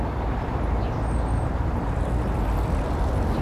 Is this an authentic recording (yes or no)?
yes